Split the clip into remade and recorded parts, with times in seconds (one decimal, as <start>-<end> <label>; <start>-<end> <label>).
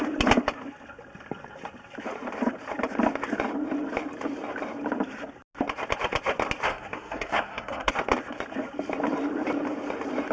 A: 0.0-6.7 recorded; 6.7-7.9 remade; 7.9-10.3 recorded